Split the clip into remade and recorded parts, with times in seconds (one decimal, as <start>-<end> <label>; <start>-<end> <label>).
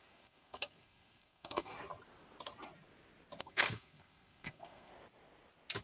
0.0-1.7 remade; 1.7-3.4 recorded; 3.4-4.9 remade; 4.9-5.8 recorded